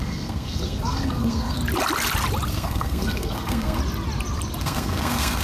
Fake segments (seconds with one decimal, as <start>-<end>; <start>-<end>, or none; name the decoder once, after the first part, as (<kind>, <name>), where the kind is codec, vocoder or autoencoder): 0.0-1.6 (codec, SNAC); 2.5-3.8; 4.6-5.4